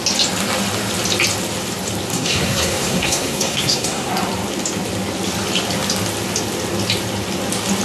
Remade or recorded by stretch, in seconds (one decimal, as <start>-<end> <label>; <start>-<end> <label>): 0.0-2.1 recorded; 2.1-4.1 remade; 4.1-7.8 recorded